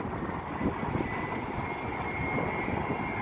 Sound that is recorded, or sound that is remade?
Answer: recorded